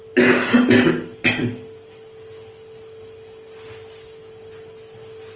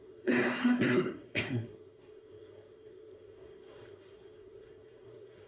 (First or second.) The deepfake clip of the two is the second